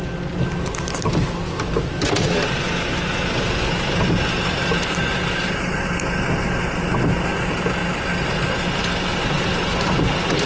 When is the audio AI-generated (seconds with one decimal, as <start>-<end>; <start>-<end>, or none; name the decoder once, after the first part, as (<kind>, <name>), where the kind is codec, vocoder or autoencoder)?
none